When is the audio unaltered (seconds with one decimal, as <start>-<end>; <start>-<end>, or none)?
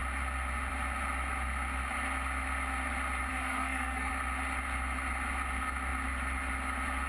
0.0-3.3; 4.1-7.1